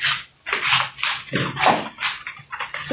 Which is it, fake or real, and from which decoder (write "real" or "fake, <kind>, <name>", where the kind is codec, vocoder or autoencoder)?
real